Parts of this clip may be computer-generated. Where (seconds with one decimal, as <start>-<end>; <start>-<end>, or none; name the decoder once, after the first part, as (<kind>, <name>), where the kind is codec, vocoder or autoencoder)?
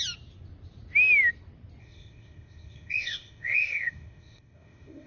1.8-5.1 (codec, ZipCodec)